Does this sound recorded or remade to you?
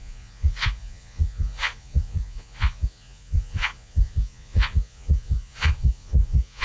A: remade